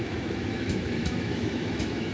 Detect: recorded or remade remade